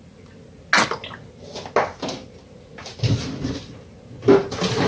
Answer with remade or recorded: recorded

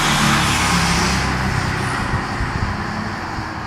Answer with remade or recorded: recorded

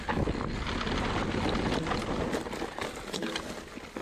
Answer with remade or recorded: recorded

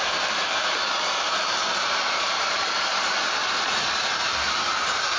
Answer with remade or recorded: remade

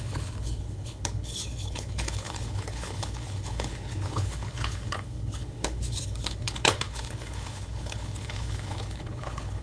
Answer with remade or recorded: remade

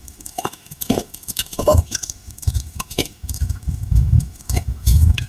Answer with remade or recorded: remade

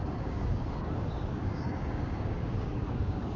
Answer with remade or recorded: remade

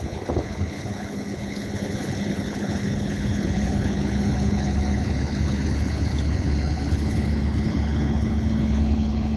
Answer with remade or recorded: remade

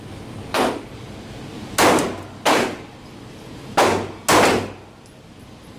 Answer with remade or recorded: recorded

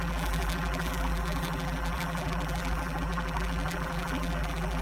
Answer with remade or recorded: remade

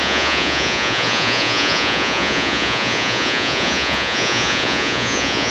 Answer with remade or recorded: remade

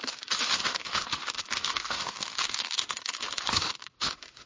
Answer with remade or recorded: remade